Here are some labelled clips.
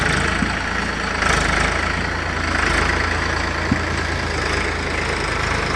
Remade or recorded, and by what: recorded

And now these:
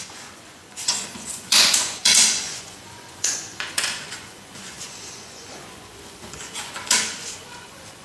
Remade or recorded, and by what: remade, vocoder, Vocos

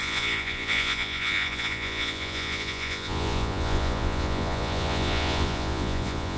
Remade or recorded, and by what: remade, vocoder, Vocos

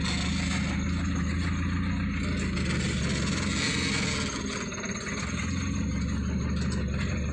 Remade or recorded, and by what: recorded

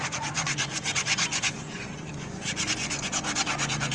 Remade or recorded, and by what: remade, vocoder, Vocos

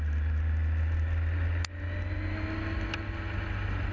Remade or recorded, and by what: recorded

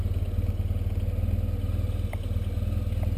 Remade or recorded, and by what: recorded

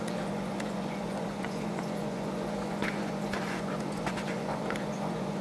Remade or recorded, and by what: remade, vocoder, Vocos